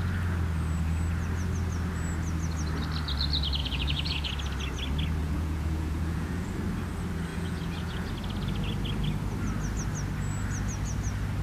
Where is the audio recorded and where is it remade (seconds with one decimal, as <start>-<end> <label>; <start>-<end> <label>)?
0.0-3.6 recorded; 3.6-4.3 remade; 4.3-5.2 recorded; 5.2-6.5 remade; 6.5-7.3 recorded; 7.3-8.1 remade; 8.1-11.4 recorded